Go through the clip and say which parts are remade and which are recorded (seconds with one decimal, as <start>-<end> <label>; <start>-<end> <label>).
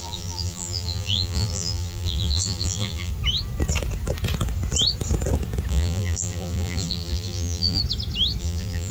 0.0-3.1 remade; 3.1-5.7 recorded; 5.7-7.8 remade; 7.8-8.4 recorded; 8.4-8.9 remade